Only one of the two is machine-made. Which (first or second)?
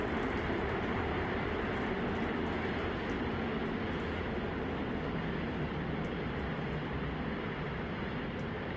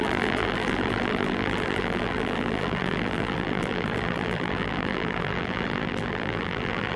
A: second